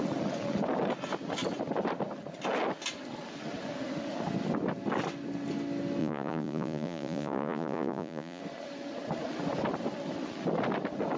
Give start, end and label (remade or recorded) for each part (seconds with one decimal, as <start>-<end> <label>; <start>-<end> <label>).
0.0-6.0 recorded; 6.0-8.4 remade; 8.4-11.2 recorded